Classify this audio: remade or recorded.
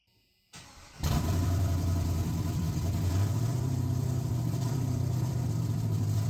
remade